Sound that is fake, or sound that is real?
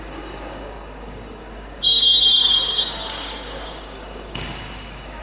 fake